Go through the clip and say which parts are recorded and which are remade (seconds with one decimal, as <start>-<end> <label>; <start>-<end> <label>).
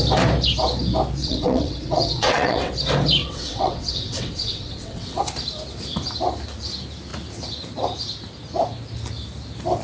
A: 0.0-1.2 recorded; 1.2-2.7 remade; 2.7-3.2 recorded; 3.2-5.2 remade; 5.2-9.8 recorded